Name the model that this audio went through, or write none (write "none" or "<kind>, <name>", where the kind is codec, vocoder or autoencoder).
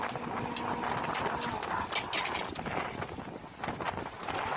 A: none